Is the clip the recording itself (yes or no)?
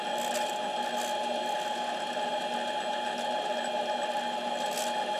yes